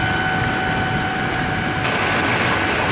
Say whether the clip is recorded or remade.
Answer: recorded